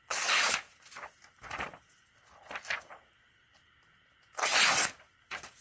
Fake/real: real